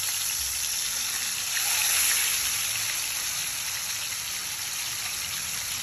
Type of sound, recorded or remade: recorded